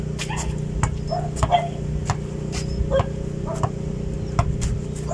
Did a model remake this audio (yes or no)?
no